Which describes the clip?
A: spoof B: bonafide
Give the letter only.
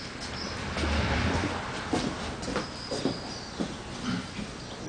B